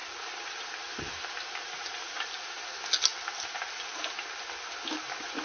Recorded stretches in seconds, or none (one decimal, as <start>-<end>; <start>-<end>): 0.0-5.4